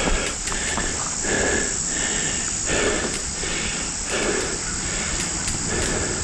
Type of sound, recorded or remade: recorded